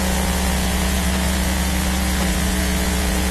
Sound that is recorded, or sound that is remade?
remade